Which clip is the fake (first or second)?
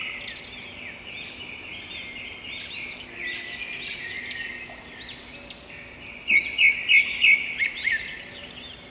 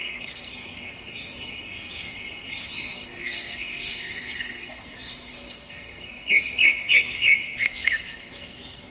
second